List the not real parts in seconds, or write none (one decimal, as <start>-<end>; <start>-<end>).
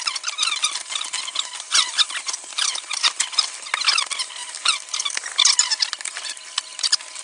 none